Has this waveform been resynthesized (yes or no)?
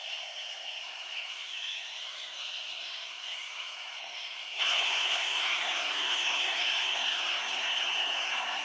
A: yes